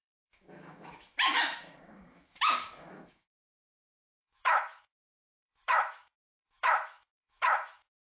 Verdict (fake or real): fake